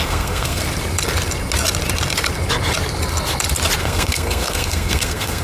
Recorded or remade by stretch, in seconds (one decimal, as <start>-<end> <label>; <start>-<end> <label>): 0.0-0.6 remade; 0.6-3.8 recorded; 3.8-5.4 remade